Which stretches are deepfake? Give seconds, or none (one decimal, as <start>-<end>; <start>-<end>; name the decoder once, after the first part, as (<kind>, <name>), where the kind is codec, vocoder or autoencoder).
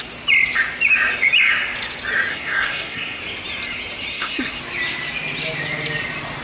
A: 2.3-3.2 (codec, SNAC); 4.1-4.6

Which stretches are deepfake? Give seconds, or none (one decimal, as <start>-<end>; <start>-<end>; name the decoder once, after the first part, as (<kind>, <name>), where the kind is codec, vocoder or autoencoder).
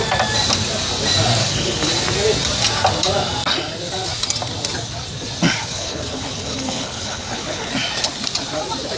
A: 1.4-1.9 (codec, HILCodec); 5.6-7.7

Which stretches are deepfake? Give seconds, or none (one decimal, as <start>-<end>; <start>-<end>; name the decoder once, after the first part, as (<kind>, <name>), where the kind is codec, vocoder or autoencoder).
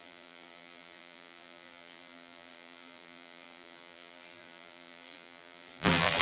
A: 0.0-6.2 (vocoder, BigVGAN v2)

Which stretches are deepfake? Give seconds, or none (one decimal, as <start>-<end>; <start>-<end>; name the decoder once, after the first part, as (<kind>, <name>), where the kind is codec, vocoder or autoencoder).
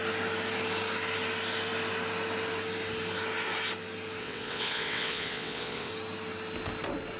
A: 4.2-5.9 (vocoder, WaveNeXt)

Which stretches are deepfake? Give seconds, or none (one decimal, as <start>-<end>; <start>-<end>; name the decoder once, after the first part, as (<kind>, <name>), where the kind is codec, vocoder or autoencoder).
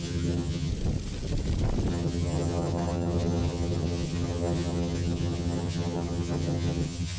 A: 0.0-0.7 (vocoder, HiFi-GAN); 1.9-7.2